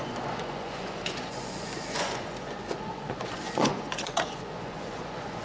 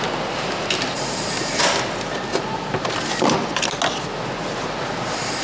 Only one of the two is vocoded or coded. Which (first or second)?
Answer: first